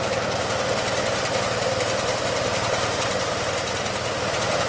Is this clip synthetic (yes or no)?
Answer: no